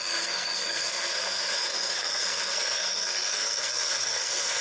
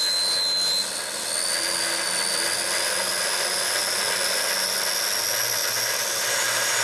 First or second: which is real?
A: second